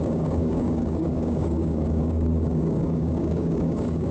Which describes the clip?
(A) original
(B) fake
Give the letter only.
B